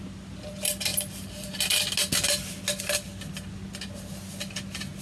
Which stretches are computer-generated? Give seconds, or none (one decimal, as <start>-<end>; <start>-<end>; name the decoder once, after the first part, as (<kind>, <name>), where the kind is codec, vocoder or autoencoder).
none

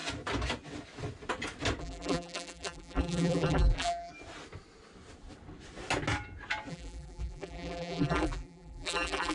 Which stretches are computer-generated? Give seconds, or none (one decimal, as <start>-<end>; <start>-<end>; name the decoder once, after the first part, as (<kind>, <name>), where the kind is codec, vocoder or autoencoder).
1.8-4.1 (vocoder, BigVGAN v2); 6.7-9.3

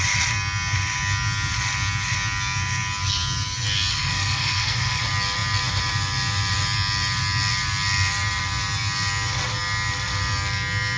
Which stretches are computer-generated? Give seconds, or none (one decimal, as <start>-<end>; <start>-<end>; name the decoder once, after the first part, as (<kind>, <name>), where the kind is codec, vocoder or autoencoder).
3.9-5.0 (codec, SNAC)

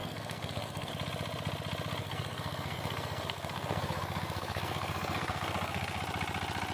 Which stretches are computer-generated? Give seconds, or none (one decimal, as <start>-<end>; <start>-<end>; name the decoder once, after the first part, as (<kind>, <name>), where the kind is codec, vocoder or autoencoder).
0.0-0.9 (codec, SNAC); 2.0-6.0

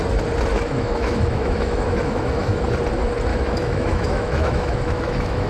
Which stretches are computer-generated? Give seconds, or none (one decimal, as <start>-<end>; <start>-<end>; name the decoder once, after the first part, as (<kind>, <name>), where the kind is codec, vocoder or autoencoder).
0.5-2.6 (autoencoder, DAC-VAE); 3.3-5.5

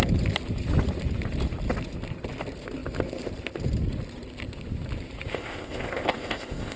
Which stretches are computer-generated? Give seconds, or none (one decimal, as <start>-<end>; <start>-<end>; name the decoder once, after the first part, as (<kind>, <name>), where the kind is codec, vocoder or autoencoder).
5.3-6.8 (codec, ZipCodec)

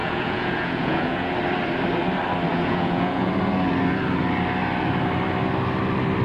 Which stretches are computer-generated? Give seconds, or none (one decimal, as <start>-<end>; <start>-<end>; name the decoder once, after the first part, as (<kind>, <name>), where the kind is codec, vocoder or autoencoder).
0.0-1.3 (vocoder, Vocos); 2.5-3.3